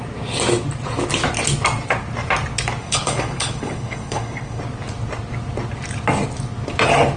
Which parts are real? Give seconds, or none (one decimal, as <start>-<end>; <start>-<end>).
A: 0.0-2.8; 4.6-7.2